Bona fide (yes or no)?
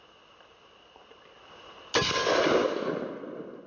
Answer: yes